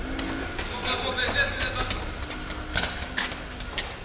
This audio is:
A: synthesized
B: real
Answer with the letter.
B